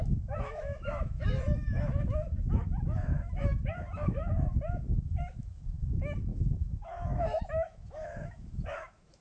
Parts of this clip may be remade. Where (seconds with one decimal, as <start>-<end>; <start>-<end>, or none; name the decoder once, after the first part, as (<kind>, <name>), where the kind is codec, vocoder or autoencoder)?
0.0-9.2 (autoencoder, DAC-VAE)